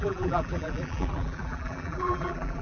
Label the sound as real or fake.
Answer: fake